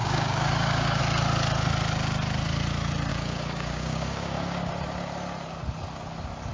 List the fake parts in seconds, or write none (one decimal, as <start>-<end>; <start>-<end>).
0.0-1.0; 3.1-4.7